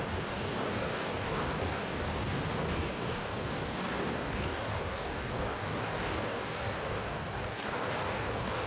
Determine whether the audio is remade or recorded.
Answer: remade